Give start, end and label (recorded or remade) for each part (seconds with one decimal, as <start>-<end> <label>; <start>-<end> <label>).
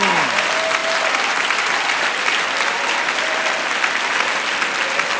0.0-5.2 recorded